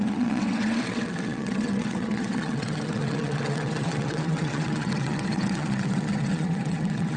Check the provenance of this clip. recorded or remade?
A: remade